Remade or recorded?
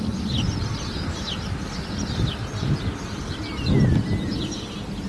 recorded